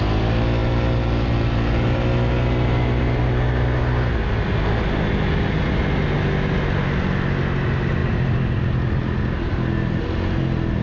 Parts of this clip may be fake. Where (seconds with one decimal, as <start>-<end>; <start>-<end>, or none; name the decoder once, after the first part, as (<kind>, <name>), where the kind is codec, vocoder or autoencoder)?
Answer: none